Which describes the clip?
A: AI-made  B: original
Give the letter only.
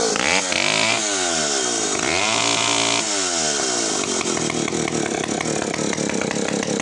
B